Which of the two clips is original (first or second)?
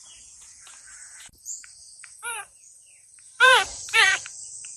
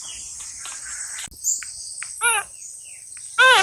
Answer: second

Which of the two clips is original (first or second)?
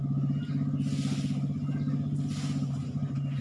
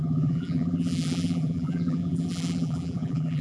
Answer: first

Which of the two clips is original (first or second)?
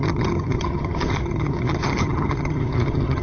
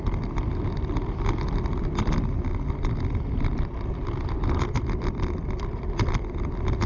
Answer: second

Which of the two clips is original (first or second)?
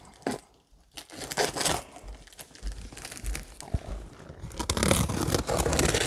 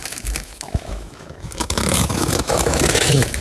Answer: first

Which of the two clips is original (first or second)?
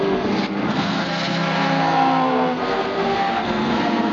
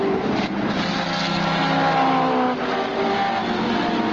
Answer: second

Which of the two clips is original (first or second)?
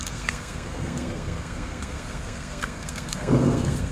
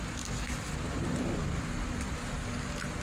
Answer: second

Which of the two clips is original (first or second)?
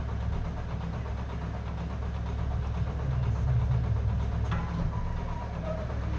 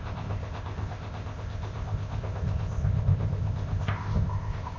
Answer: first